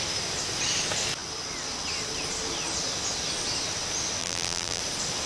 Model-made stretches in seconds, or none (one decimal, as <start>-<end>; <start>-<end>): 4.2-4.8